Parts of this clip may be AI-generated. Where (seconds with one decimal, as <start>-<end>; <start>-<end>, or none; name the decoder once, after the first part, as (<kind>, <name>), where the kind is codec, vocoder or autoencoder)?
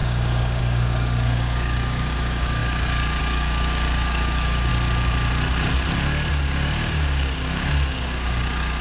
0.0-4.7 (codec, DAC); 6.3-8.8